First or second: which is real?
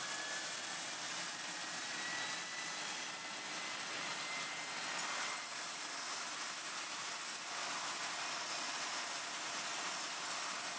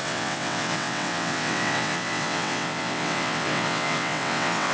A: first